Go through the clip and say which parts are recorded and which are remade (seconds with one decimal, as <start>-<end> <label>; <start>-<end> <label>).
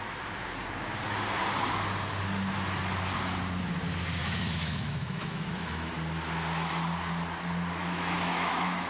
0.0-4.2 recorded; 4.2-5.9 remade; 5.9-7.8 recorded; 7.8-8.9 remade